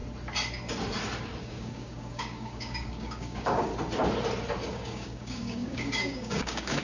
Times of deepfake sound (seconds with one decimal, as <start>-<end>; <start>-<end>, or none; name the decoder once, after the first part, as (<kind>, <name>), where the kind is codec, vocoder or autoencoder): 1.4-3.7 (codec, DAC); 4.7-6.8